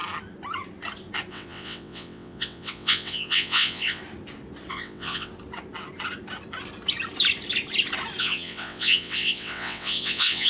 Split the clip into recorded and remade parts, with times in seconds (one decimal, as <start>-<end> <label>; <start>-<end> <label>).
0.0-1.3 recorded; 1.3-4.0 remade; 4.0-4.7 recorded; 4.7-5.3 remade; 5.3-8.2 recorded; 8.2-10.5 remade